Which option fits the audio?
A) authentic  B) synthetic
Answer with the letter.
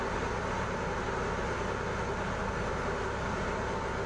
A